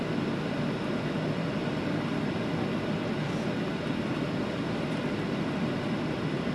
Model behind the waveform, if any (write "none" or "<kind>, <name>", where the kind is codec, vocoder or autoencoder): none